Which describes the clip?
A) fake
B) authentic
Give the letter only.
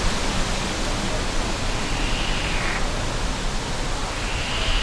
B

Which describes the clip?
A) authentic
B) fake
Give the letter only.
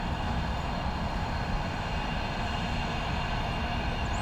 A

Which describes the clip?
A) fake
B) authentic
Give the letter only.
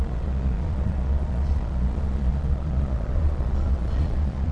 A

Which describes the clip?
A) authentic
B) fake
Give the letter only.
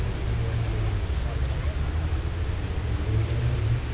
A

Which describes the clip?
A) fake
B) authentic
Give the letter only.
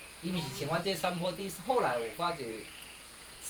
A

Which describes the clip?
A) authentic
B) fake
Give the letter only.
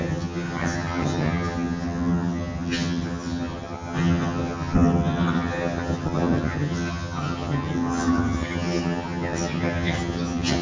B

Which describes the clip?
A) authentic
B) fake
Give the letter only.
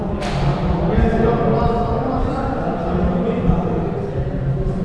A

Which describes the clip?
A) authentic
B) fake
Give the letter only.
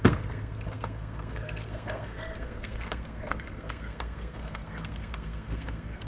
B